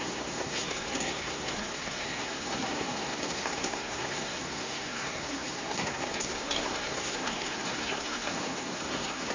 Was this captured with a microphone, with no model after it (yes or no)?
no